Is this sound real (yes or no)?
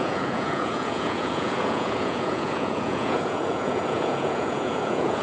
no